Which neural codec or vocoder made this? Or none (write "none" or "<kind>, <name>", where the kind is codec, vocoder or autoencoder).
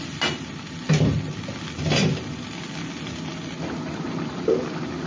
none